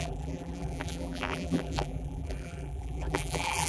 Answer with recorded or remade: remade